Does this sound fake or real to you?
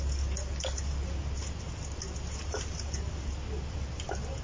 real